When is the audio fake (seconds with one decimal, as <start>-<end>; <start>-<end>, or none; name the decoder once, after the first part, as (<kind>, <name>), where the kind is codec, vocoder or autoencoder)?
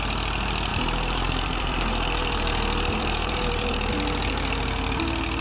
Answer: 0.7-3.9 (vocoder, BigVGAN v2)